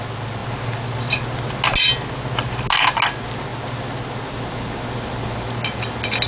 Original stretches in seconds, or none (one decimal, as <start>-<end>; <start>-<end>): 0.0-6.3